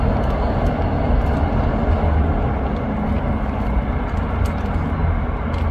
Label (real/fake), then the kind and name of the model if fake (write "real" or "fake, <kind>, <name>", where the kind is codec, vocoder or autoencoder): real